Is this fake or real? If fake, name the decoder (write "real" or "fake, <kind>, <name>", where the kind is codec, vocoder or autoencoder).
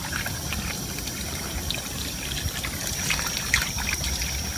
real